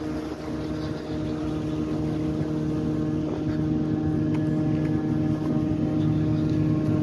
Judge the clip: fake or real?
real